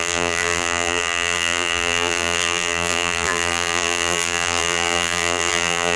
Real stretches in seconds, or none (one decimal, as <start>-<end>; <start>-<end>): none